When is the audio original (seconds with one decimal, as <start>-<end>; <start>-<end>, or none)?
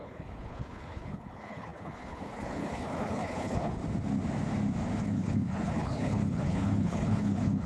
3.8-5.0